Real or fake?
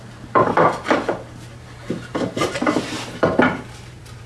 fake